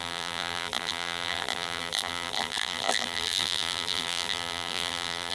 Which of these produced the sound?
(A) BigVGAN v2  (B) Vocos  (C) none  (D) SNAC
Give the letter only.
A